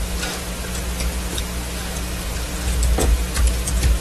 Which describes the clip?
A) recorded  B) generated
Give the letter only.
A